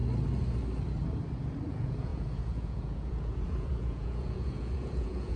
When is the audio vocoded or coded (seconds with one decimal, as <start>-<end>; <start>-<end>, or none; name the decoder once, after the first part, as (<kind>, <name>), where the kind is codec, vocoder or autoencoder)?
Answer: 1.7-5.4 (vocoder, Vocos)